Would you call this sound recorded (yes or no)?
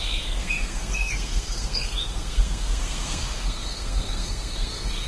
no